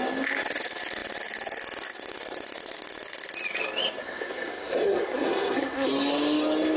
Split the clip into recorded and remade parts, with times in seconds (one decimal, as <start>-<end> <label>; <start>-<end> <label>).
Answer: 0.0-4.0 recorded; 4.0-5.9 remade; 5.9-6.8 recorded